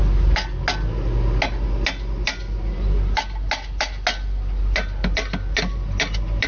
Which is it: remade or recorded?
recorded